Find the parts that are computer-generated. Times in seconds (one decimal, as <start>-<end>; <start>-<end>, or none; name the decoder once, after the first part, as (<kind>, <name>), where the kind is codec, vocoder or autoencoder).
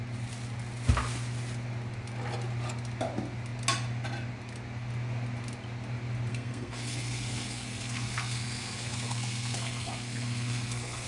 6.3-11.1 (codec, SNAC)